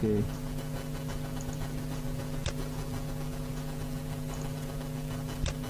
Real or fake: real